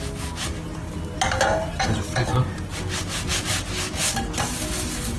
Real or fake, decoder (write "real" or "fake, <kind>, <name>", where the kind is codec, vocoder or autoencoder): real